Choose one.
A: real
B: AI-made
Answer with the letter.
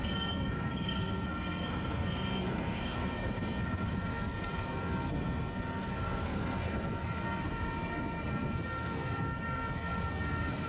B